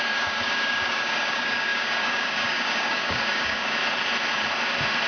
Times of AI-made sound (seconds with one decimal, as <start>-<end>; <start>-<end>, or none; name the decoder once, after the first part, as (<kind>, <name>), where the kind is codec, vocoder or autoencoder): 0.0-3.8 (codec, DAC)